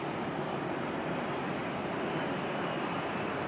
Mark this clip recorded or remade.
recorded